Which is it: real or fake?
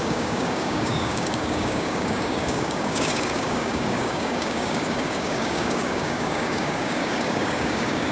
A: fake